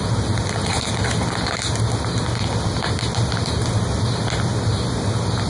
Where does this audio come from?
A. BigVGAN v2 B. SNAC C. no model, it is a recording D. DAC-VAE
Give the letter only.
C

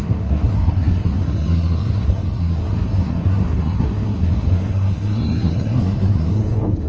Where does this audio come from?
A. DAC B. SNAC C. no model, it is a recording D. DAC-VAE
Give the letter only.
B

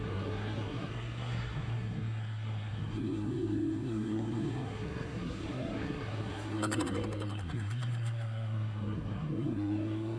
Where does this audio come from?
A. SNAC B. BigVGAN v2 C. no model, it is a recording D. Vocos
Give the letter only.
A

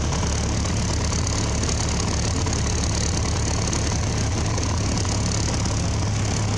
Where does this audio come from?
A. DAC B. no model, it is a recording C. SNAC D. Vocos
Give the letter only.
B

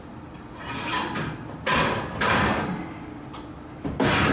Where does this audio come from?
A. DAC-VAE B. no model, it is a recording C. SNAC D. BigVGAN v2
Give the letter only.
B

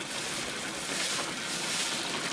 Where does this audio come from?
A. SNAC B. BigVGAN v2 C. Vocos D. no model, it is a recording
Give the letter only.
D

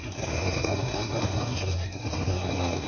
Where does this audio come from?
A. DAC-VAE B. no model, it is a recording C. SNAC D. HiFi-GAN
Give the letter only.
C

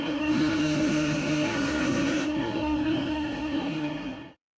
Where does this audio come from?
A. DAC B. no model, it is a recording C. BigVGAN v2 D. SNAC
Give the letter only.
D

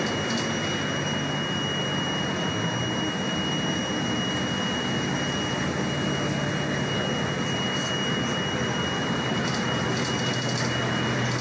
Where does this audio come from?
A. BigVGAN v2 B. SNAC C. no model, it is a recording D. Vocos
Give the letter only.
C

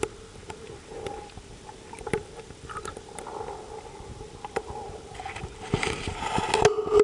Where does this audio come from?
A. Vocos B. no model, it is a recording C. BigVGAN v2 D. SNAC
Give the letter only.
B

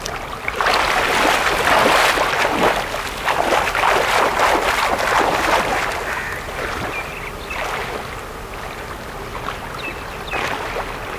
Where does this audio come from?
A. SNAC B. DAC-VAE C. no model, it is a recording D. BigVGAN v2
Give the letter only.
C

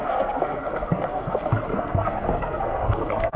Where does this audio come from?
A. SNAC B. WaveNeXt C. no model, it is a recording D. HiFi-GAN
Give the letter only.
A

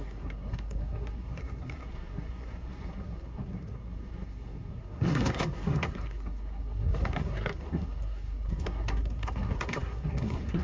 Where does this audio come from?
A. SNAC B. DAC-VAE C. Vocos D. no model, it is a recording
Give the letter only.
A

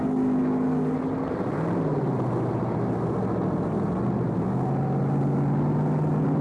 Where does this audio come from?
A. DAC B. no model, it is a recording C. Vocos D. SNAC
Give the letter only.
B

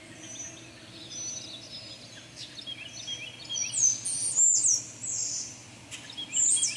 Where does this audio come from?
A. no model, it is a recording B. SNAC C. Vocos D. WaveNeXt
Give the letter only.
A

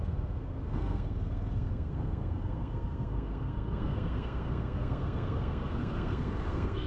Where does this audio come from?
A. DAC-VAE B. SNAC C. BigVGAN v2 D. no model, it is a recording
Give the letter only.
B